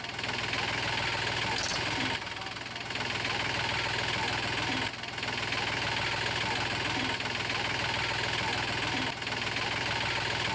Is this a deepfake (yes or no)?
no